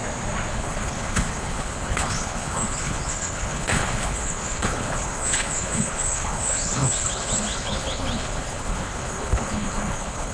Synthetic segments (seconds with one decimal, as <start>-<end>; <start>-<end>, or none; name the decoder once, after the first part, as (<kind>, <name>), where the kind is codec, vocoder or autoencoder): 0.5-10.3 (codec, HILCodec)